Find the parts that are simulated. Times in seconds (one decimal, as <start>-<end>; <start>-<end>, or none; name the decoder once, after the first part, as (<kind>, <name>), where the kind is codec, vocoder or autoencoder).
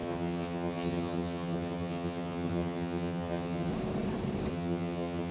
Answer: 0.0-3.7 (vocoder, HiFi-GAN); 4.5-5.3